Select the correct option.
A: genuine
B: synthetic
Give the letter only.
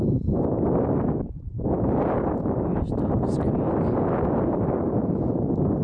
B